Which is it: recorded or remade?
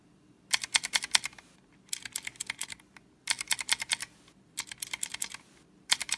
recorded